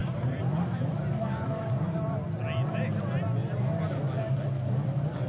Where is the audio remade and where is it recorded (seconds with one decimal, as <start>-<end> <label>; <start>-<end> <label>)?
0.0-5.3 recorded